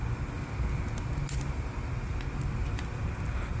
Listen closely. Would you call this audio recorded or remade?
recorded